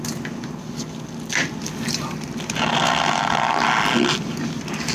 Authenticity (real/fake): real